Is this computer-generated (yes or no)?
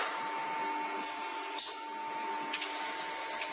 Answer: no